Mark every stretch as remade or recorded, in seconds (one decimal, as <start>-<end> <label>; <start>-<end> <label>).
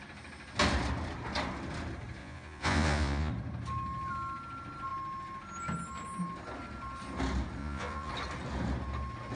0.0-2.2 recorded; 2.2-3.3 remade; 3.3-7.6 recorded; 7.6-8.1 remade; 8.1-9.4 recorded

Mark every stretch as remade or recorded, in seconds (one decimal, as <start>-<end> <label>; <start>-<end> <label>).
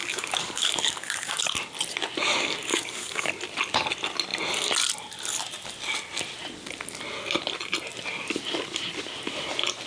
0.0-1.4 remade; 1.4-2.7 recorded; 2.7-3.3 remade; 3.3-9.9 recorded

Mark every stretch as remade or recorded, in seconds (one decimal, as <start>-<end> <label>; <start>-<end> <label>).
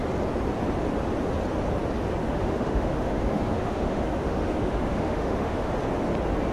0.0-2.2 recorded; 2.2-5.7 remade; 5.7-6.5 recorded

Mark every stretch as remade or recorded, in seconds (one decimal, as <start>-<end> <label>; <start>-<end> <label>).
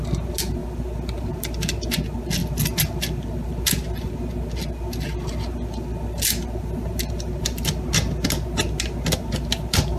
0.0-10.0 recorded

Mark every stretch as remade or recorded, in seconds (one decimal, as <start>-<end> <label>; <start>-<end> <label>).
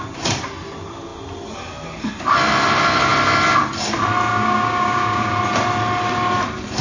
0.0-4.3 recorded; 4.3-5.3 remade; 5.3-6.8 recorded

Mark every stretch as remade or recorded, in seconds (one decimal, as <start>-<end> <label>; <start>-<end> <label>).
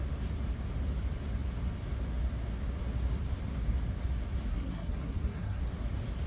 0.0-4.5 recorded; 4.5-5.6 remade; 5.6-6.3 recorded